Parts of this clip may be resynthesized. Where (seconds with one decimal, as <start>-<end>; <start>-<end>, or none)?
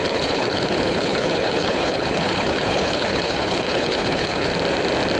0.0-4.5